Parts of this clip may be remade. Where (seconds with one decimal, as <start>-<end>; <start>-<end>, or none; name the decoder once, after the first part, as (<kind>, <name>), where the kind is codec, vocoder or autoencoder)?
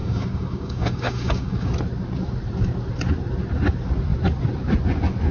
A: 0.0-1.7 (codec, DAC)